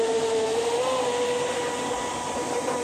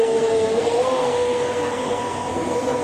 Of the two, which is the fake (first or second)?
second